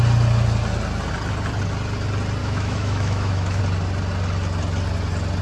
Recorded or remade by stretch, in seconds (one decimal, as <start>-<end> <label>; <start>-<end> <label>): 0.0-2.4 recorded; 2.4-3.6 remade; 3.6-5.4 recorded